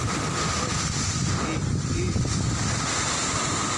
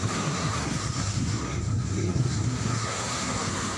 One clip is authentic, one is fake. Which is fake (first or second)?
second